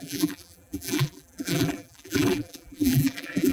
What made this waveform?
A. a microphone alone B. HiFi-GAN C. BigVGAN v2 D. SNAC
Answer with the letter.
C